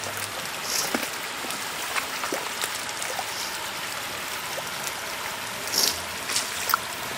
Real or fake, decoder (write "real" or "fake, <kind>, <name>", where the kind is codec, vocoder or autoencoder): real